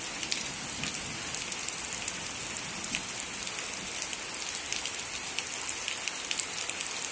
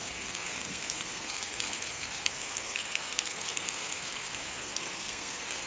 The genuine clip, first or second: first